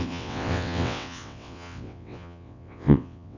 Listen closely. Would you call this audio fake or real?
fake